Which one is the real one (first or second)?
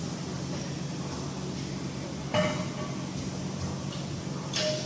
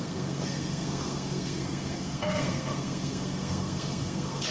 first